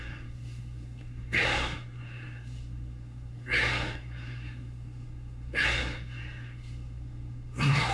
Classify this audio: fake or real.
fake